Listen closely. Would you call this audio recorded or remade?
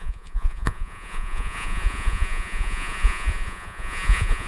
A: remade